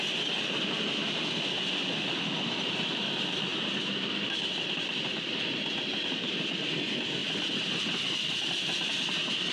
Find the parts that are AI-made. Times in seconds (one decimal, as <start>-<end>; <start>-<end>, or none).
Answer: none